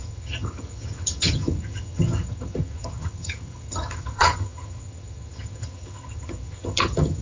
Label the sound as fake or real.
fake